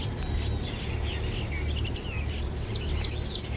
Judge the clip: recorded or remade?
recorded